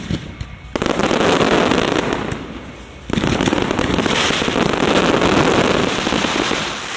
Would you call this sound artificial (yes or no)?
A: no